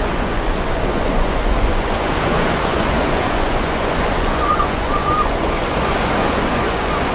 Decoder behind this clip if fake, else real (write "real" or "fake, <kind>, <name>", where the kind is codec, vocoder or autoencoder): fake, vocoder, Vocos